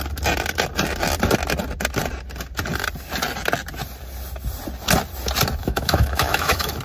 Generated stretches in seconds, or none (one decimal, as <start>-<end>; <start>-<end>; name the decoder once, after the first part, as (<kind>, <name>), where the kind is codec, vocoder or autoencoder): 5.6-6.8 (autoencoder, DAC-VAE)